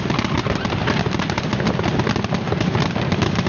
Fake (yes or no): no